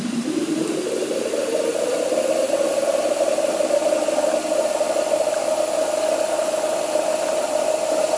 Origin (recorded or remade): recorded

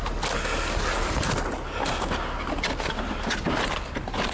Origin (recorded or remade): recorded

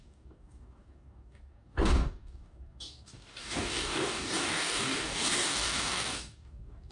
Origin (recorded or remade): remade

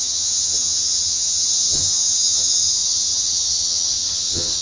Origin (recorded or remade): remade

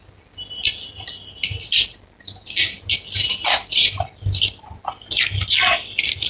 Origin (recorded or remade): recorded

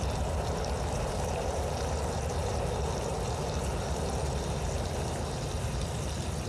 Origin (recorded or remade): recorded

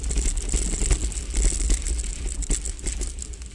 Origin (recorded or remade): recorded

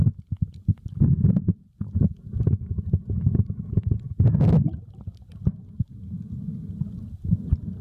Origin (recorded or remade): recorded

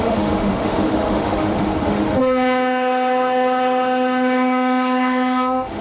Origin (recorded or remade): remade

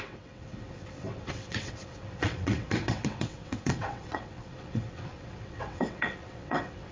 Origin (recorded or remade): remade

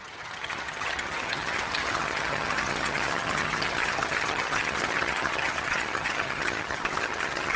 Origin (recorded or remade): remade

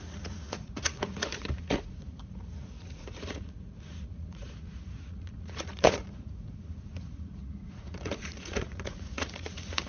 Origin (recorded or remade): remade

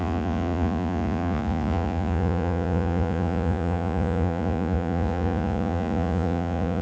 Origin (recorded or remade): remade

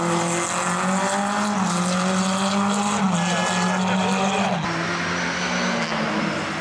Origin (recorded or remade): recorded